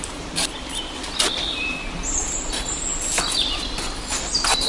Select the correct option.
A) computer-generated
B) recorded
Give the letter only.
B